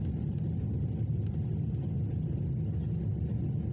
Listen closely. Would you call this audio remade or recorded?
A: recorded